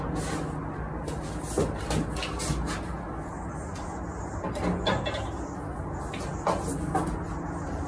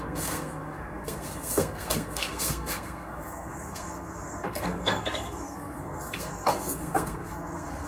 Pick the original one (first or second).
first